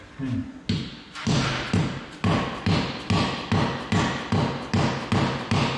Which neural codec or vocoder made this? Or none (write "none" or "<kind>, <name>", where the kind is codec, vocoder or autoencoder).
none